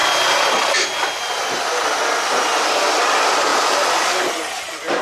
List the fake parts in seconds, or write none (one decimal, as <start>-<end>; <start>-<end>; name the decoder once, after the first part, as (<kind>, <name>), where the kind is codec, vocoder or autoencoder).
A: none